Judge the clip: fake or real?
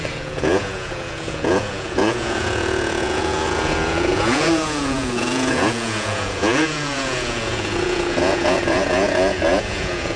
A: fake